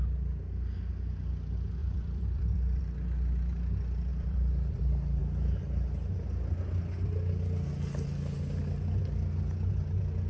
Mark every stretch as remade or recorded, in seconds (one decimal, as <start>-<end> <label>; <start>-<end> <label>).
0.0-1.8 recorded; 1.8-2.8 remade; 2.8-4.1 recorded; 4.1-4.8 remade; 4.8-10.3 recorded